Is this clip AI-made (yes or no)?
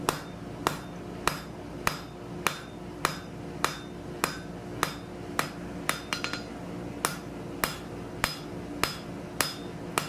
no